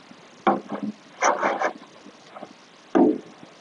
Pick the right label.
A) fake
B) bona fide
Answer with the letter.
B